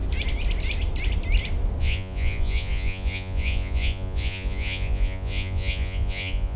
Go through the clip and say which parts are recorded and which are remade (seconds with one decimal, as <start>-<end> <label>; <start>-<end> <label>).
0.0-1.8 recorded; 1.8-6.6 remade